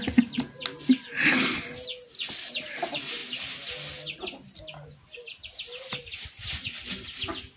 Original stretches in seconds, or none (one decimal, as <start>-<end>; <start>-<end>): 0.0-7.6